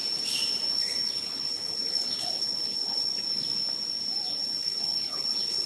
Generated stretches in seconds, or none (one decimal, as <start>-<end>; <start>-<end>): 0.7-3.1; 4.3-5.7